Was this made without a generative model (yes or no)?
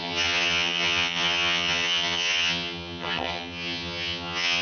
no